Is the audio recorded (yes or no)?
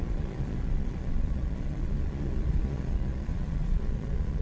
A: no